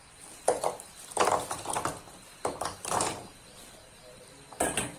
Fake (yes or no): yes